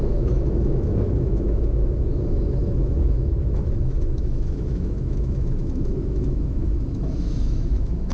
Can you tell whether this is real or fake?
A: fake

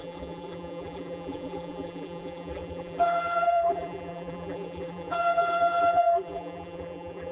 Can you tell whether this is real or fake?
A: fake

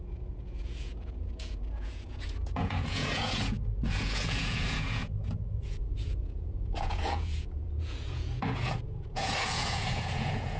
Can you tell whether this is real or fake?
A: fake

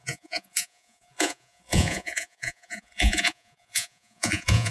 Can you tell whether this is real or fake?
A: fake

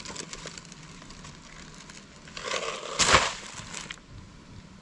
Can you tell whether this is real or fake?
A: real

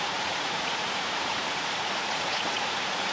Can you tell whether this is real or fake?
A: fake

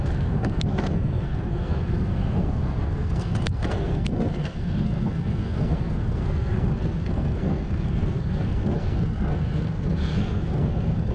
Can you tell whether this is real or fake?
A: fake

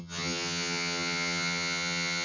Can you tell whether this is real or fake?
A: fake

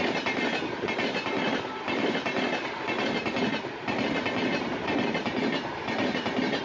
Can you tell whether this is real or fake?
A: fake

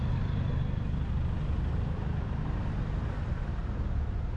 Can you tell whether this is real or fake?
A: real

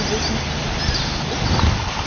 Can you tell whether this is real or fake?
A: real